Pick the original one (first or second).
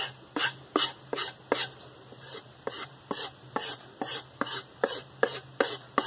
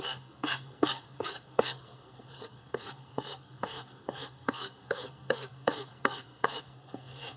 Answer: first